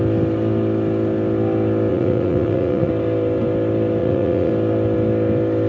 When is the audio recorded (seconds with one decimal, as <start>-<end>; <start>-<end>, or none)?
0.0-1.9; 2.9-4.0; 4.5-5.7